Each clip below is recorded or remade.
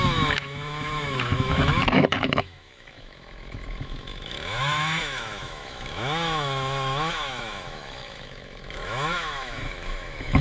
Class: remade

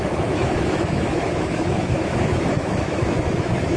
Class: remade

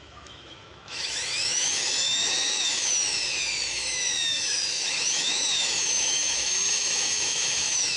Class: remade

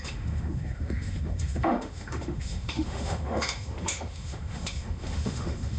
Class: remade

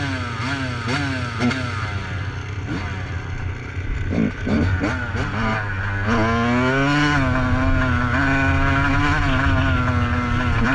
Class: recorded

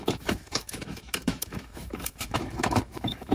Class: remade